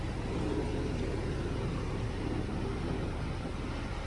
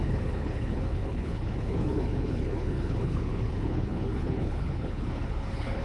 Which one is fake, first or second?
second